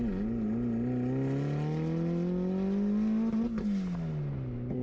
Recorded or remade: recorded